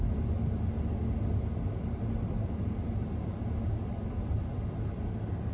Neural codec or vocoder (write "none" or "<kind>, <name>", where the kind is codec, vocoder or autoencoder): none